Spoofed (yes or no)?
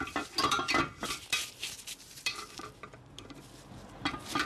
no